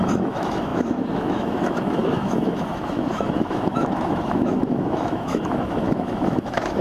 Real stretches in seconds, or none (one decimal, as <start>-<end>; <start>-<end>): none